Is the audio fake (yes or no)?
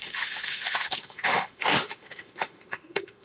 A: yes